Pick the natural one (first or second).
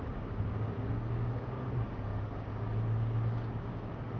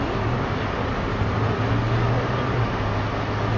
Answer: second